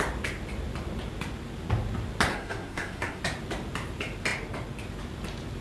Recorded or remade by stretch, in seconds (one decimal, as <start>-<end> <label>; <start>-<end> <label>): 0.0-2.3 recorded; 2.3-3.2 remade; 3.2-5.6 recorded